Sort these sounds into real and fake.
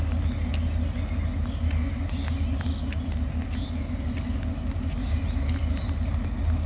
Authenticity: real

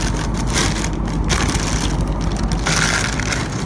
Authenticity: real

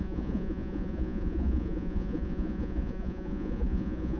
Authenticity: fake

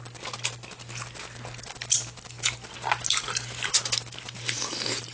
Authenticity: real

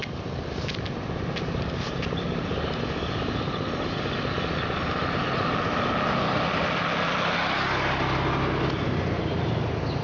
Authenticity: real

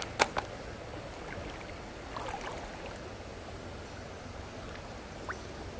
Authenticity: real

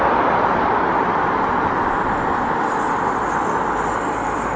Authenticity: real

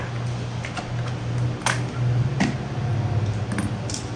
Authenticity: real